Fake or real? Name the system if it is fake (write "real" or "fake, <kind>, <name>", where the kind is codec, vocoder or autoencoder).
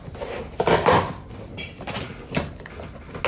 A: real